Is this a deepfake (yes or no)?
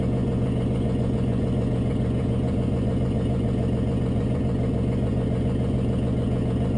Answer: yes